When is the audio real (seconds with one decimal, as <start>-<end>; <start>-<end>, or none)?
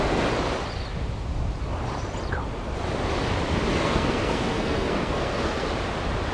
0.0-3.7; 5.7-6.3